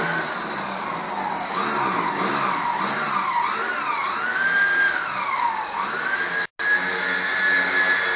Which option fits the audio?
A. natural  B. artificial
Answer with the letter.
A